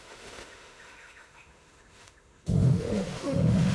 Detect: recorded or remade remade